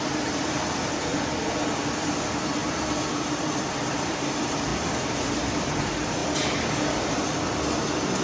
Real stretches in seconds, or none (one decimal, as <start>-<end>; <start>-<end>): 1.1-3.9; 6.2-8.2